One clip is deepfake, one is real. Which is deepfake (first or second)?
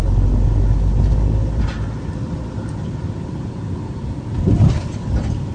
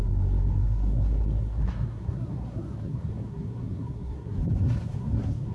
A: second